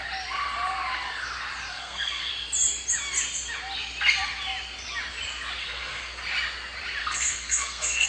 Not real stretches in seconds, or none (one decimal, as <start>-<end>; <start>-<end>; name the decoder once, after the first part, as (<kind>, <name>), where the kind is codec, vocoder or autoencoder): 1.7-2.3 (codec, SNAC); 5.6-6.2; 7.0-8.1